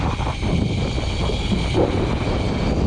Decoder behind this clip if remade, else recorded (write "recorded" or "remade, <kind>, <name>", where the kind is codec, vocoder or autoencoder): recorded